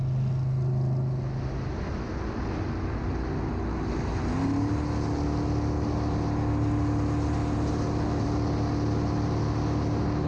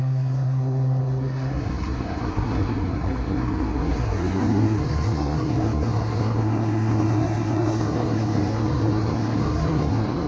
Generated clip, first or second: second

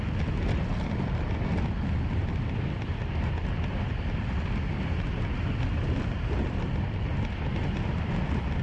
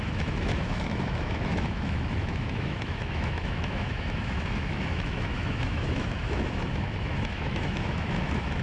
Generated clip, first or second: second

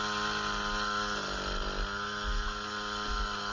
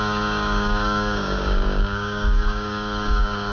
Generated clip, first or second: second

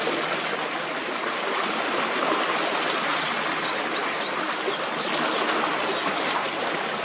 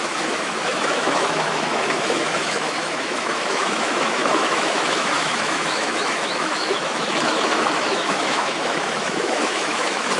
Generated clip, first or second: second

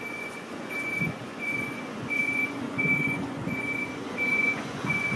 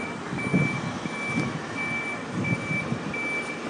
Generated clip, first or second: first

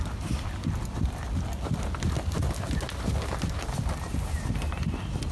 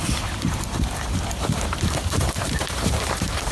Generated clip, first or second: second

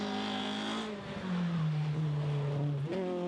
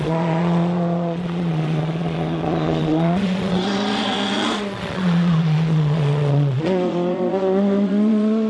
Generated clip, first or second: second